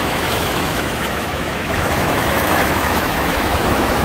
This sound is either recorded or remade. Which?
remade